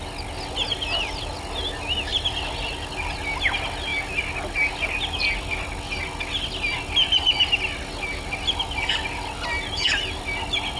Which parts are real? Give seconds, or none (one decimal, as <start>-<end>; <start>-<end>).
0.0-10.8